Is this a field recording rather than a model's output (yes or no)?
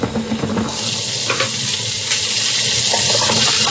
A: yes